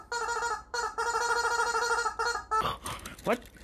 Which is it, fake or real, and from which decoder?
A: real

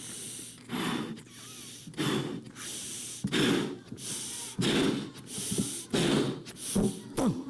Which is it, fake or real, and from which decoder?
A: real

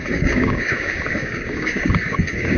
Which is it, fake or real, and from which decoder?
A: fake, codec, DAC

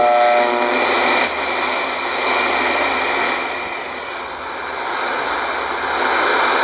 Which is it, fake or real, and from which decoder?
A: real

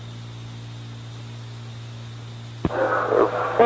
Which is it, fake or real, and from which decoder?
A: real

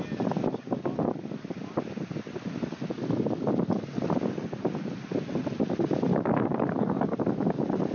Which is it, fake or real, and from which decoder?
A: real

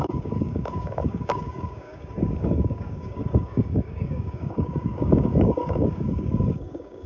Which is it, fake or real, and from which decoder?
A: fake, codec, DAC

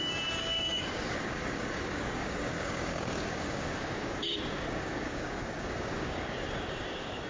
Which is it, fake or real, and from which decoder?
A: fake, codec, DAC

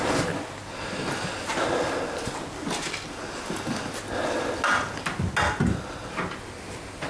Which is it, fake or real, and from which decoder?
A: real